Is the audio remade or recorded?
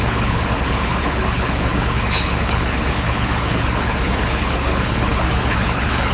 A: remade